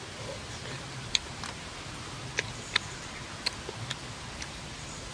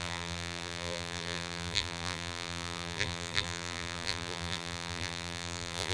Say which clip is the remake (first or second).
second